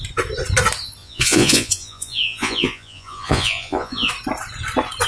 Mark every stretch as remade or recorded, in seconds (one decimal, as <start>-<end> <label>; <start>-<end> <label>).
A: 0.0-1.0 recorded; 1.0-4.1 remade; 4.1-5.1 recorded